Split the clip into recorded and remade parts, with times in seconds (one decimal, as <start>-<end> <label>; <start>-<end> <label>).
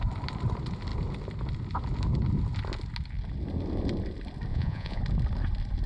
0.0-4.5 recorded; 4.5-5.0 remade; 5.0-5.9 recorded